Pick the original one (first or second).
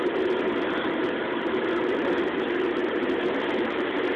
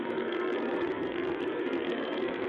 first